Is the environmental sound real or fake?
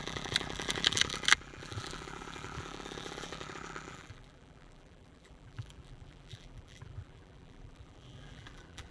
fake